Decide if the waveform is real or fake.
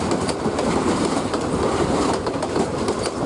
fake